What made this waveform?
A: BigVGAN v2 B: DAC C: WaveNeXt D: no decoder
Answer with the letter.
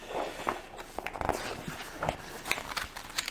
D